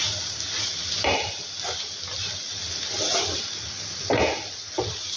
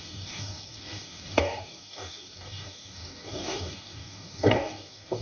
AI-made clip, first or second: second